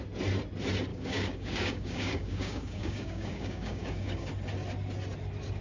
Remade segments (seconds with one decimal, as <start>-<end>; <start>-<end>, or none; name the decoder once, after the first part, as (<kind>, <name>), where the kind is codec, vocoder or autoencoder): 0.9-4.3 (codec, DAC)